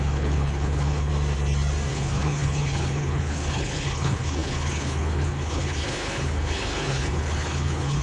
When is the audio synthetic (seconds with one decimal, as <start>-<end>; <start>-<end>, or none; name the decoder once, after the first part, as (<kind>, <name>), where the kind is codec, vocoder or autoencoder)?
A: 0.0-1.1 (codec, HILCodec); 1.9-8.0